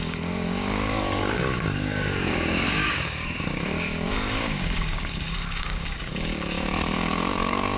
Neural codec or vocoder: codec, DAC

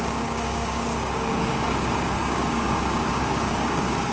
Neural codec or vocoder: codec, DAC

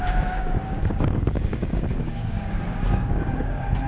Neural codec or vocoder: codec, DAC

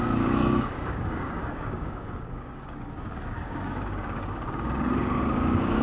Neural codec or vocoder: codec, DAC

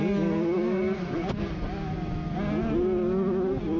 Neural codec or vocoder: none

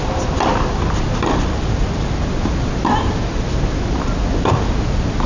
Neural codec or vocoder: none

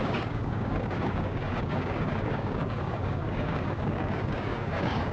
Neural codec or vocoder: codec, DAC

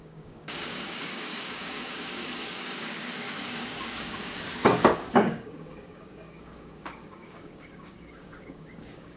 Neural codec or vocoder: codec, DAC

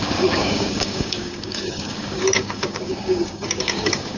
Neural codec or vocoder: codec, DAC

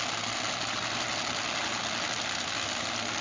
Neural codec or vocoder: none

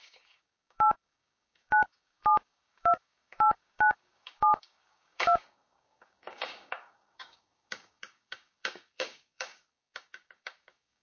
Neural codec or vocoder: codec, DAC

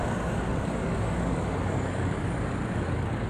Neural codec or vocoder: codec, DAC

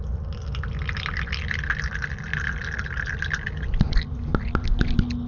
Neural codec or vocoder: none